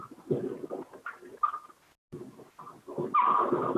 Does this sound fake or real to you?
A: real